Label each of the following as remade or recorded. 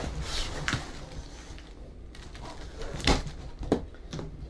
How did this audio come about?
recorded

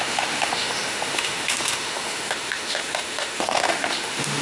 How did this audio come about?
remade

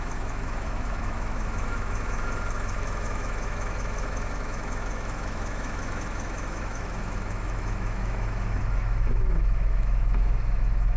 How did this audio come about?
remade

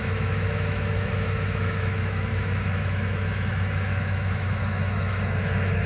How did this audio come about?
remade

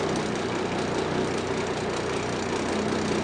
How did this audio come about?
recorded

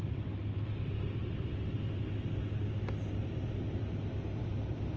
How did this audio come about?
recorded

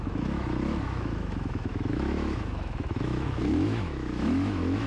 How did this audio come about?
remade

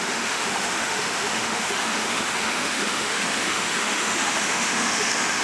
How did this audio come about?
remade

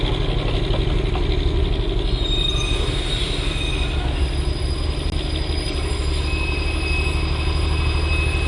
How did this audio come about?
recorded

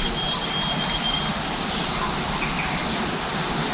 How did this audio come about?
recorded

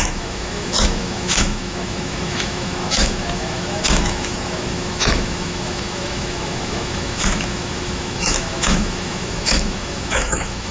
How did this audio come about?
remade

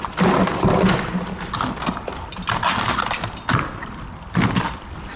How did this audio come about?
recorded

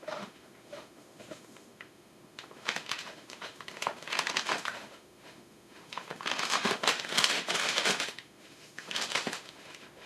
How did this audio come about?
remade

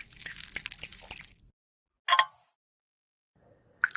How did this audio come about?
recorded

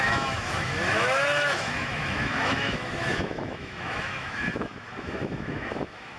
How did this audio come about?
remade